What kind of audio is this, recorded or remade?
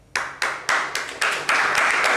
recorded